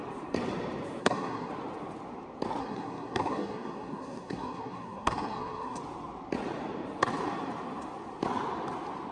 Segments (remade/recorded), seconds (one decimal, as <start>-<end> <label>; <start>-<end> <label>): 0.0-1.0 recorded; 1.0-1.5 remade; 1.5-2.6 recorded; 2.6-5.8 remade; 5.8-9.1 recorded